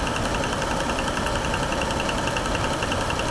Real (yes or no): yes